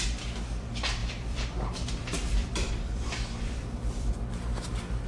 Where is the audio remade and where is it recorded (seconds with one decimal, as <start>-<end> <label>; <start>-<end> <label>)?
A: 0.0-1.0 recorded; 1.0-4.1 remade; 4.1-5.1 recorded